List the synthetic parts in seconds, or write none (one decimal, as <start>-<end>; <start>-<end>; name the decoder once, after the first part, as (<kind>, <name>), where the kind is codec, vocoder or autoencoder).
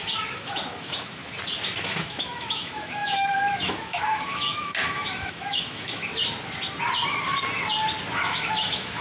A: 0.0-1.2 (autoencoder, DAC-VAE); 1.8-6.1; 8.1-9.0